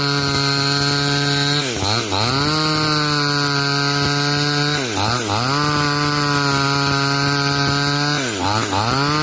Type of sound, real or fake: real